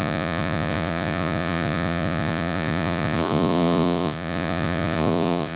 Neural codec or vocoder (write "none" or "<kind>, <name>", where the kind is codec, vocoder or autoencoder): vocoder, Vocos